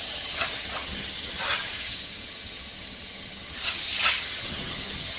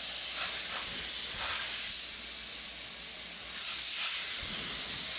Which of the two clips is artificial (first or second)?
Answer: first